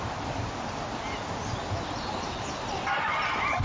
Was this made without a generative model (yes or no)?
yes